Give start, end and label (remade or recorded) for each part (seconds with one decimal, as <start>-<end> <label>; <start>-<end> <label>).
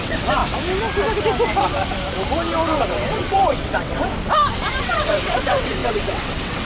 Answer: 0.0-0.4 remade; 0.4-2.8 recorded; 2.8-4.0 remade; 4.0-4.8 recorded; 4.8-6.6 remade